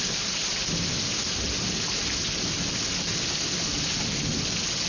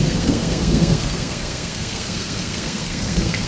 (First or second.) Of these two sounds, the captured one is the first